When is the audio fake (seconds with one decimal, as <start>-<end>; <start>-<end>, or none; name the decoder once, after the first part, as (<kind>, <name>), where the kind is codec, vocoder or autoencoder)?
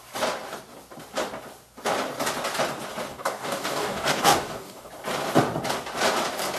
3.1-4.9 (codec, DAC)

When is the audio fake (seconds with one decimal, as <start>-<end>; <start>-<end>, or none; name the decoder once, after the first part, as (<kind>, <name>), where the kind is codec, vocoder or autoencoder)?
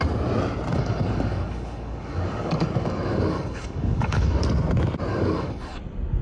0.7-4.4 (codec, DAC); 5.1-5.8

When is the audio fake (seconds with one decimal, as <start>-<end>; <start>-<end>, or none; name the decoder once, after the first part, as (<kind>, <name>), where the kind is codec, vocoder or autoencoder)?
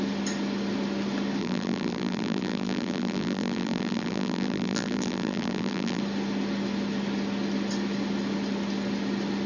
1.4-6.0 (vocoder, BigVGAN v2)